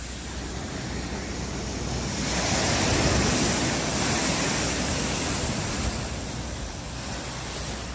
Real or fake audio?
real